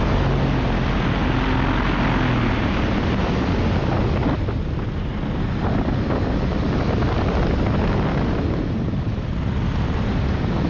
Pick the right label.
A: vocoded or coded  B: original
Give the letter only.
B